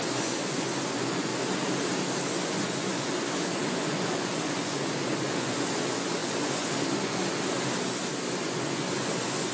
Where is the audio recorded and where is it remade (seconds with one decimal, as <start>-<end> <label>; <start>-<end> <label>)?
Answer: 0.0-1.3 remade; 1.3-2.3 recorded; 2.3-7.2 remade; 7.2-8.4 recorded; 8.4-9.5 remade